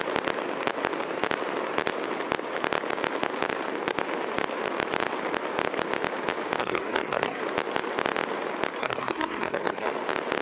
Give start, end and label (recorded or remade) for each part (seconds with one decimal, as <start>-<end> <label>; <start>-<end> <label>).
0.0-6.6 recorded; 6.6-7.4 remade; 7.4-8.8 recorded; 8.8-9.9 remade; 9.9-10.4 recorded